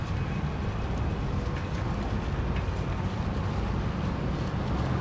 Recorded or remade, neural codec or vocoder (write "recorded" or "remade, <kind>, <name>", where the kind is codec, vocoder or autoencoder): recorded